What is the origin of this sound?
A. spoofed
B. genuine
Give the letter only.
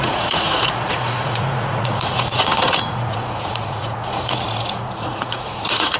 A